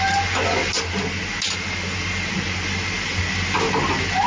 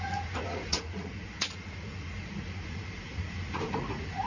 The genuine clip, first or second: first